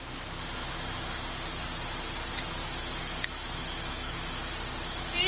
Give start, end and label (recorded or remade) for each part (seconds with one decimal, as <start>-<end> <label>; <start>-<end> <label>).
0.0-2.6 recorded; 2.6-4.4 remade; 4.4-5.3 recorded